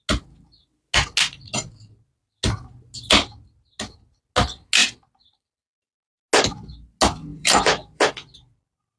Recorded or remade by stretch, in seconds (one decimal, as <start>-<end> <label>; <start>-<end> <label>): 0.0-7.3 recorded; 7.3-9.0 remade